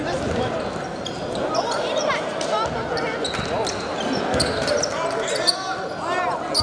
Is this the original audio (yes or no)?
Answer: yes